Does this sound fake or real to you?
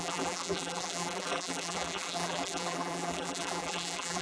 fake